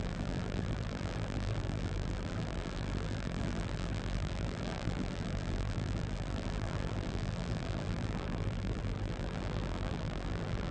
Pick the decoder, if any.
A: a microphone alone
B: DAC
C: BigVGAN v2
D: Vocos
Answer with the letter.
C